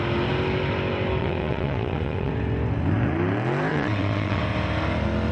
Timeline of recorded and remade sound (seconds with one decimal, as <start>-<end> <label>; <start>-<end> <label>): 0.0-1.2 recorded; 1.2-2.3 remade; 2.3-3.7 recorded; 3.7-4.4 remade; 4.4-5.3 recorded